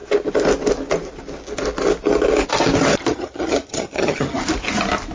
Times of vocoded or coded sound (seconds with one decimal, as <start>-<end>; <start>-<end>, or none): 3.1-4.4

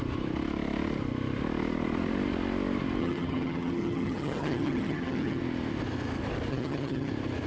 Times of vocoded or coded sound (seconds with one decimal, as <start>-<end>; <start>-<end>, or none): 3.0-5.4; 6.5-7.1

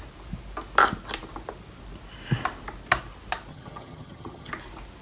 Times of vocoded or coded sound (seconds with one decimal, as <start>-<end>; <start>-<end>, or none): 3.5-4.5

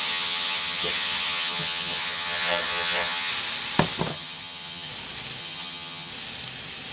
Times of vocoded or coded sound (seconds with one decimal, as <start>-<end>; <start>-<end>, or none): 0.0-3.3; 4.1-4.9; 5.4-6.1

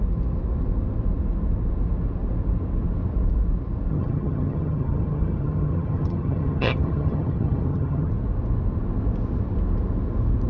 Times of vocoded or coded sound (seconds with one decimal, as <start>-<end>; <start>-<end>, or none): 3.9-8.1

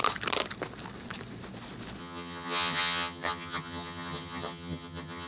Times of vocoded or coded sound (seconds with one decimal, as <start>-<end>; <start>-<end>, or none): 2.0-5.3